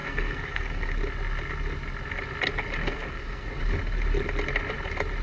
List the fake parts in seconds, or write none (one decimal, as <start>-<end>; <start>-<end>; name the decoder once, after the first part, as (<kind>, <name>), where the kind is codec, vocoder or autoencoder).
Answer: 0.0-0.9 (codec, SNAC); 2.8-3.6